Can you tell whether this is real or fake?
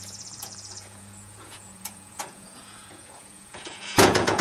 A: fake